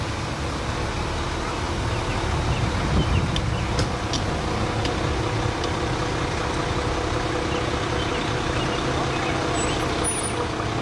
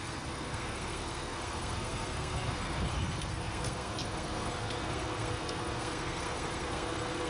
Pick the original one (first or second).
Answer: first